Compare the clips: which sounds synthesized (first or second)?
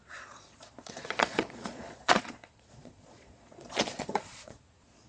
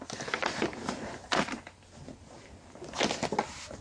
first